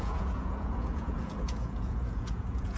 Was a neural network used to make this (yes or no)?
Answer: yes